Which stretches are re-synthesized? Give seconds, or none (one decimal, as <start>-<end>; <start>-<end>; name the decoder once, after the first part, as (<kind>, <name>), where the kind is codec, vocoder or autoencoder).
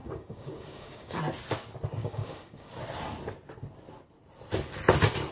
0.0-1.2 (codec, DAC); 2.0-2.7